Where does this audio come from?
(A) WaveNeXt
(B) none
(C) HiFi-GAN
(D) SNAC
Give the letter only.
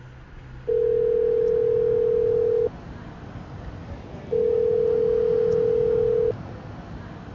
B